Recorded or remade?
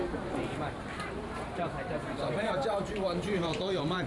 remade